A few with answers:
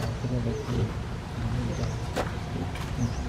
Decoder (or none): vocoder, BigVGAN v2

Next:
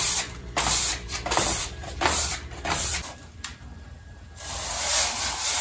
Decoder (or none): vocoder, BigVGAN v2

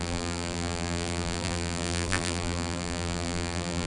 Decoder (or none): vocoder, BigVGAN v2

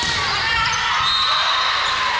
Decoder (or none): none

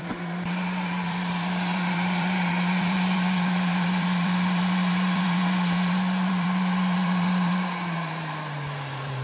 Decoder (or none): vocoder, BigVGAN v2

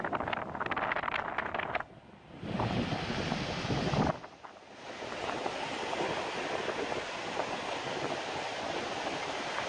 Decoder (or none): none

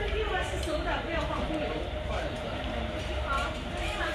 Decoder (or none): vocoder, BigVGAN v2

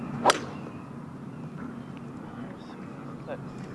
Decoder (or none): none